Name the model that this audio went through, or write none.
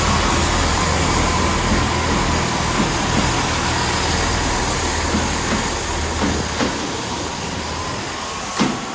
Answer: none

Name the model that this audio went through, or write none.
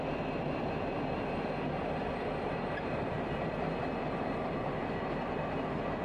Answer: vocoder, BigVGAN v2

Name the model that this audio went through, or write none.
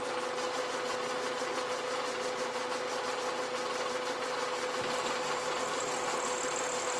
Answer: none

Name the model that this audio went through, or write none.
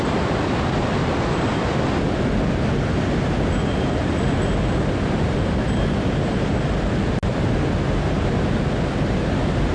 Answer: none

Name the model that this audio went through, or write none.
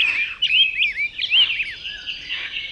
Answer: none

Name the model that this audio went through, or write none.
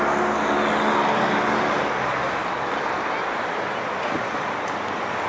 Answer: none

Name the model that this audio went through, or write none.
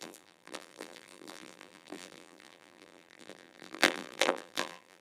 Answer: vocoder, BigVGAN v2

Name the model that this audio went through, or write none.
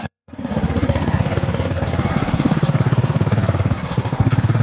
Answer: codec, SNAC